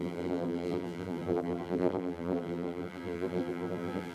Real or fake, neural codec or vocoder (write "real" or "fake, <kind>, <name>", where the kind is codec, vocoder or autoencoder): fake, vocoder, BigVGAN v2